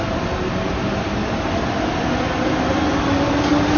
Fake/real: real